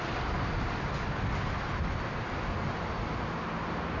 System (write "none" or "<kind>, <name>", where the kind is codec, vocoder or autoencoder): none